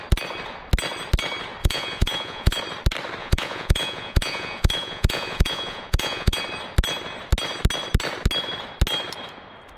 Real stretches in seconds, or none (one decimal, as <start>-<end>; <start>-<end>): 0.0-1.6; 2.6-3.2; 6.4-9.8